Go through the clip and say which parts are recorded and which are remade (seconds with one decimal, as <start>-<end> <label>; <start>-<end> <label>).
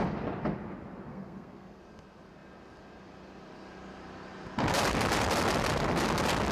0.0-1.1 recorded; 1.1-1.8 remade; 1.8-6.5 recorded